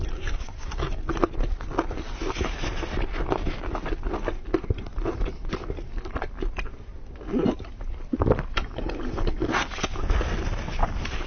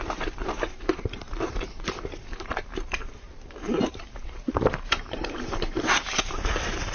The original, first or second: first